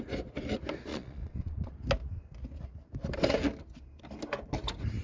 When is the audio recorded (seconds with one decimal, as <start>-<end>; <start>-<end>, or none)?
0.0-0.9; 1.7-5.0

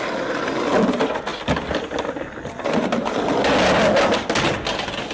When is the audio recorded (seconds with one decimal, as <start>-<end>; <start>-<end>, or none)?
0.0-5.1

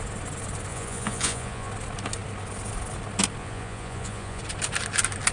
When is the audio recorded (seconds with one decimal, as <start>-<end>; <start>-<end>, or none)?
0.0-0.7; 1.7-3.4; 4.4-5.3

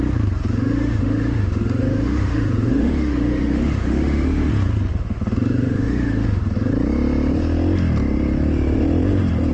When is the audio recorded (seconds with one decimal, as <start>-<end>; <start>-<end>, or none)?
0.0-0.5; 4.5-4.9; 6.7-9.5

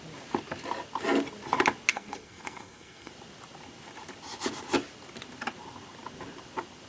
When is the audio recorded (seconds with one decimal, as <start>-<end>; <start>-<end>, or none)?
0.0-1.9; 3.1-6.9